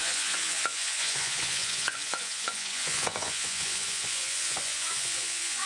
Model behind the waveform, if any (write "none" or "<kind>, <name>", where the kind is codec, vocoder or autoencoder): vocoder, Vocos